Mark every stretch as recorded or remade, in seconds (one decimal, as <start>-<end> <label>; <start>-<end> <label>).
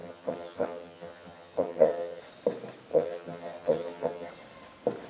0.0-2.2 remade; 2.2-2.9 recorded; 2.9-4.3 remade; 4.3-5.1 recorded